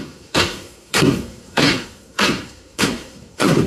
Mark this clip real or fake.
fake